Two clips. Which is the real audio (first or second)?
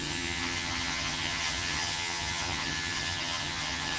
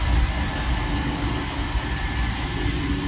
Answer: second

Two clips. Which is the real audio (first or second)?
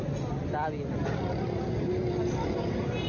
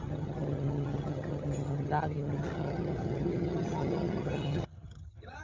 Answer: first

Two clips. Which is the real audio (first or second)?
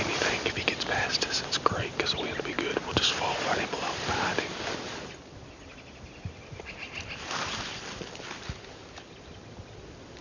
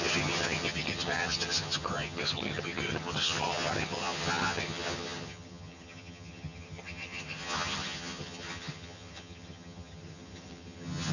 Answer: first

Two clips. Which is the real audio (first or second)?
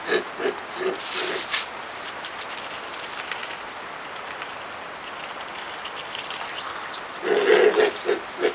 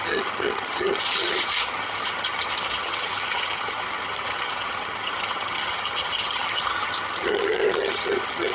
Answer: first